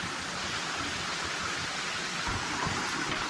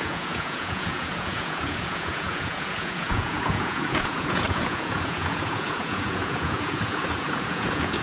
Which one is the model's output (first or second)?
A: second